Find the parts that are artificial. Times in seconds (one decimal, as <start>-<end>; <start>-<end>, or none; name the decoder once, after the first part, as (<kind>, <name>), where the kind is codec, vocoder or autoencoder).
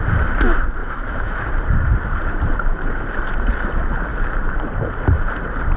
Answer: 0.8-1.5 (autoencoder, DAC-VAE)